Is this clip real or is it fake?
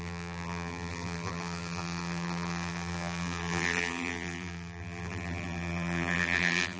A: fake